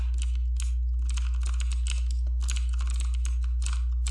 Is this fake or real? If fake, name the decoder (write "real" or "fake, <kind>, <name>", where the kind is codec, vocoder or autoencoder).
real